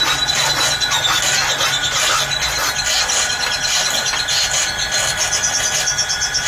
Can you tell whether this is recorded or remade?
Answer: recorded